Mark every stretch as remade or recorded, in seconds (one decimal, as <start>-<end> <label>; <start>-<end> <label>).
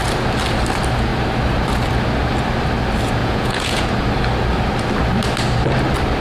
0.0-3.2 recorded; 3.2-3.9 remade; 3.9-6.2 recorded